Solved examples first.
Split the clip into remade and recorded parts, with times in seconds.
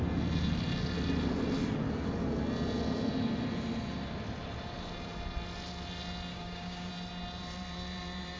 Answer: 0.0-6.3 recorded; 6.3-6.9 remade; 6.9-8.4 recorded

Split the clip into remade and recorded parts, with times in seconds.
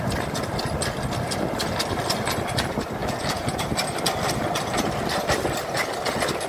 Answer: 0.0-3.0 recorded; 3.0-3.6 remade; 3.6-6.5 recorded